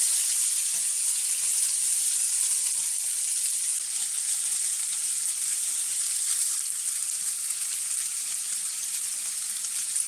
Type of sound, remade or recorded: recorded